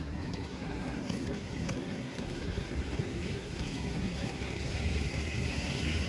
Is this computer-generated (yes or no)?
yes